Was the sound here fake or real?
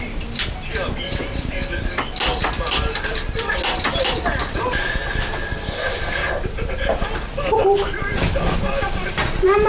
real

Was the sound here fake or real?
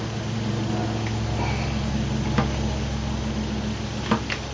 real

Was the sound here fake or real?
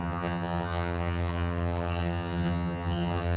fake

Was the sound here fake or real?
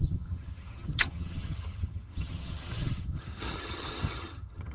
fake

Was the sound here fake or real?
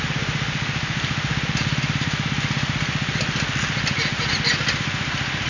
real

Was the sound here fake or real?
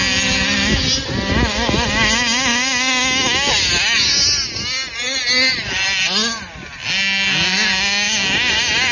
real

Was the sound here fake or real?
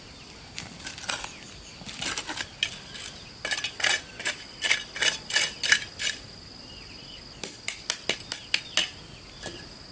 real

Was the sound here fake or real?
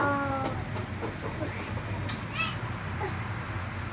real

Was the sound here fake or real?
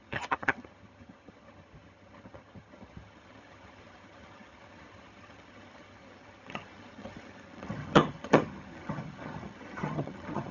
fake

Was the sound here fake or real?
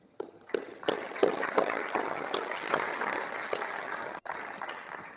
fake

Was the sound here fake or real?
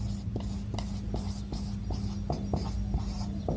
real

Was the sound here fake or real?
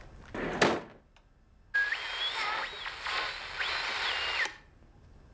real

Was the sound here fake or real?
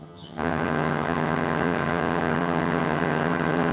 fake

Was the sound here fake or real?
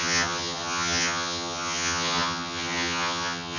fake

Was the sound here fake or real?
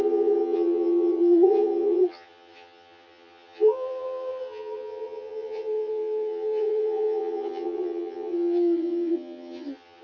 fake